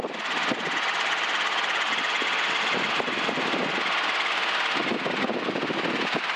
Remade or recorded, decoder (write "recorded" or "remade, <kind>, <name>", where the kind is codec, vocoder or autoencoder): recorded